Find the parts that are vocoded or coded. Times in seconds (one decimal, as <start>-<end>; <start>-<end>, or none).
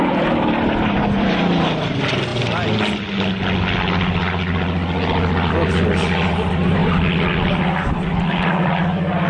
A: 0.0-2.3; 5.5-6.8; 8.3-9.3